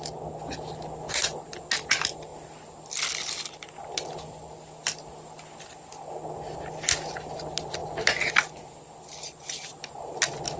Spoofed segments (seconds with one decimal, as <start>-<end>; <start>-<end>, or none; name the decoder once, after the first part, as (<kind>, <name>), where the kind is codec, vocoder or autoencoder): none